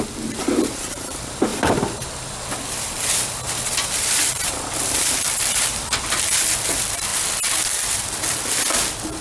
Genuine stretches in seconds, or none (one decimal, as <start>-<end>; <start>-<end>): 7.1-9.2